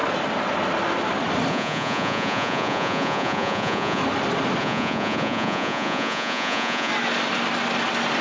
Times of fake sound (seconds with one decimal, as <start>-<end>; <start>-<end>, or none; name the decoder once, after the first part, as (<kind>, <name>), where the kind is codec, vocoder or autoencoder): 1.5-4.0 (vocoder, Vocos); 4.6-6.9